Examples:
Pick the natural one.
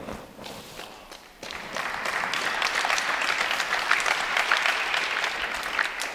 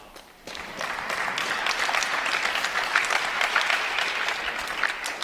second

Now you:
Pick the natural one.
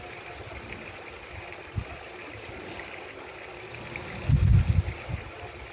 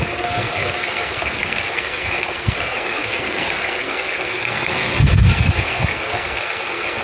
first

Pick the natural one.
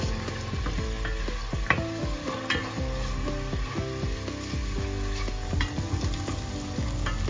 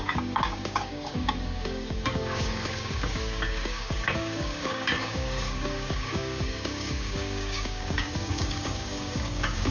first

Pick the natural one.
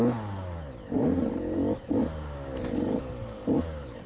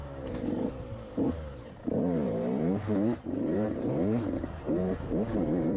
first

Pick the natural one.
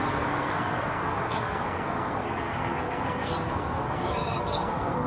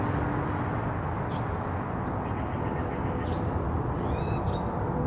second